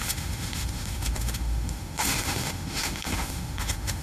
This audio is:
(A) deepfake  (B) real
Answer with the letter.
A